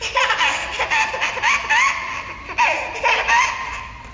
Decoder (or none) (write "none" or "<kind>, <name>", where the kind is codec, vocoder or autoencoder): none